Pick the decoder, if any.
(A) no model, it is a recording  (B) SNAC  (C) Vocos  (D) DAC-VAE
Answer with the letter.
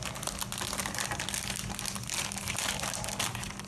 A